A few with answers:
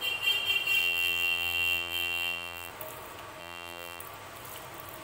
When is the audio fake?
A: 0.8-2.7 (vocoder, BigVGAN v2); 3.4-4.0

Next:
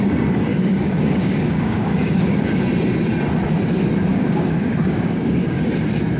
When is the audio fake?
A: 0.5-2.6 (codec, DAC); 4.1-5.6